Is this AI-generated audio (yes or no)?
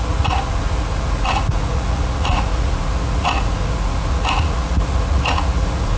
yes